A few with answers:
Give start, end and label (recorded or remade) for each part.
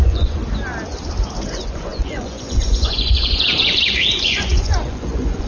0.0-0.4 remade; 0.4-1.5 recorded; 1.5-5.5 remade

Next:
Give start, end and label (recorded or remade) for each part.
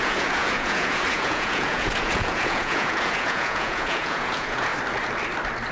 0.0-4.7 remade; 4.7-5.7 recorded